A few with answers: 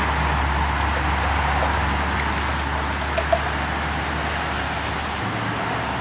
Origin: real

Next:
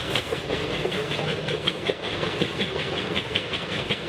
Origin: fake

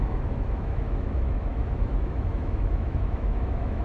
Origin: fake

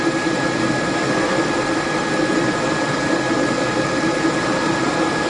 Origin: real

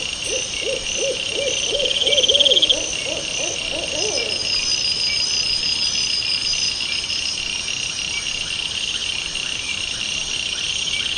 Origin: real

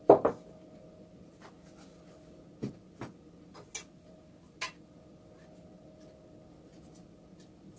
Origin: real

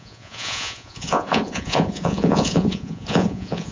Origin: fake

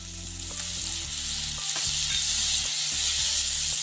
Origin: real